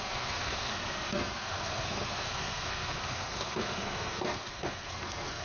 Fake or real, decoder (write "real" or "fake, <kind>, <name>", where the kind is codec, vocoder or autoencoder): fake, codec, SNAC